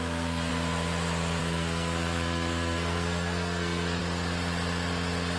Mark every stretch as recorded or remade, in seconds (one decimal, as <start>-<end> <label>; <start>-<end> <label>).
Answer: 0.0-0.5 remade; 0.5-1.4 recorded; 1.4-4.0 remade; 4.0-5.4 recorded